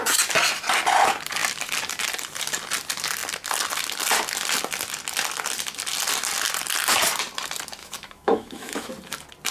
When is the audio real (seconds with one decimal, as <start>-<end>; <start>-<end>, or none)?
0.0-7.8; 8.9-9.5